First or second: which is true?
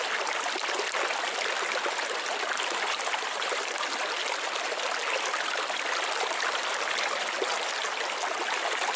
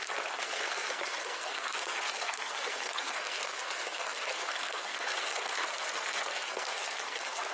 first